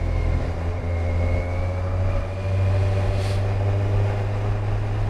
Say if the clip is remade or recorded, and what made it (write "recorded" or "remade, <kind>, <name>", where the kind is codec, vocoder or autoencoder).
recorded